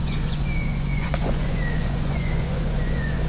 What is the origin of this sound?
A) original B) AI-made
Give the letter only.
B